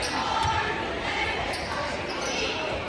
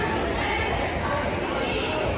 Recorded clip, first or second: second